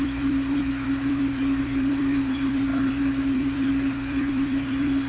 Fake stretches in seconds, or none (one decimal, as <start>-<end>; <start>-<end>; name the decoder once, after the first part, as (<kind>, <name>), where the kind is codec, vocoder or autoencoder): 0.0-5.1 (vocoder, BigVGAN v2)